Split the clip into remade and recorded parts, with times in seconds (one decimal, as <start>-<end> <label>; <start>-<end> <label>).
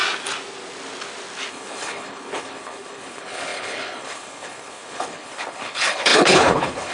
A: 0.0-1.5 recorded; 1.5-6.9 remade